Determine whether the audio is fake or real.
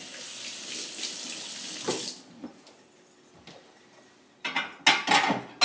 real